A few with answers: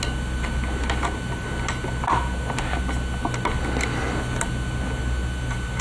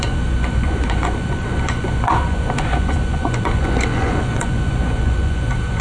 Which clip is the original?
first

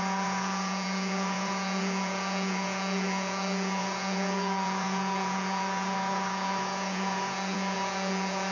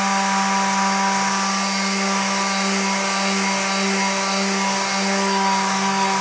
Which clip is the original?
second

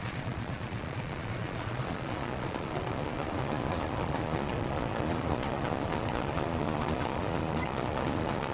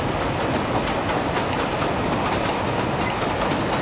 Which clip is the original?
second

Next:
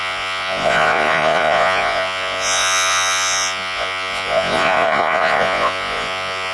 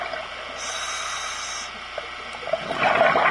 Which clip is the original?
second